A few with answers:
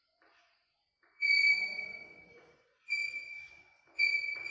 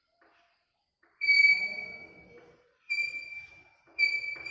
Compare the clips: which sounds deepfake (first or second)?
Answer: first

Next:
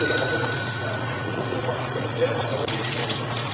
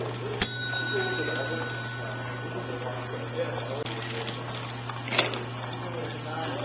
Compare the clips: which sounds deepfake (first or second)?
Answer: first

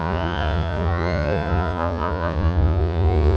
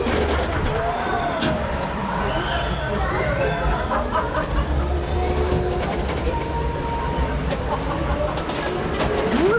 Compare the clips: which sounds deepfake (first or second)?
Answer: first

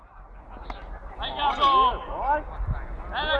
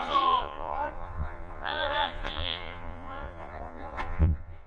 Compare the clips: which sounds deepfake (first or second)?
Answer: second